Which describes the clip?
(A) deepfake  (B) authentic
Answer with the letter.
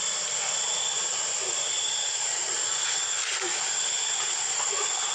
B